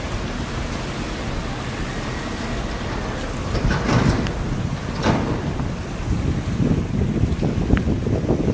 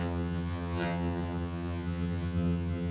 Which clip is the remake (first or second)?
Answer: second